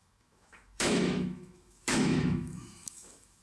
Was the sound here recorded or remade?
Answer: remade